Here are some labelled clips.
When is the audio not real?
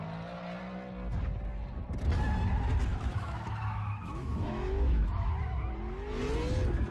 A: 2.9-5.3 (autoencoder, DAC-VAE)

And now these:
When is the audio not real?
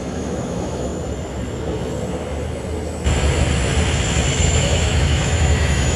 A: 0.0-0.9 (autoencoder, DAC-VAE); 4.4-6.0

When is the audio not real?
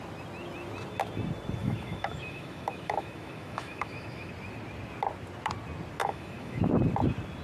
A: 1.6-4.3 (autoencoder, DAC-VAE); 6.0-6.6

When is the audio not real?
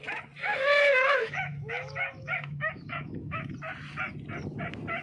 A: 0.5-3.5 (autoencoder, DAC-VAE)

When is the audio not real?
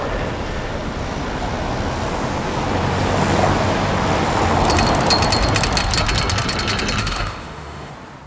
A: 7.0-7.9 (autoencoder, DAC-VAE)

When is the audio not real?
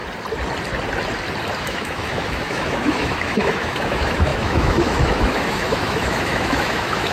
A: 1.6-7.1 (autoencoder, DAC-VAE)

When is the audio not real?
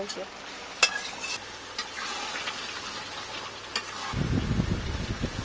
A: none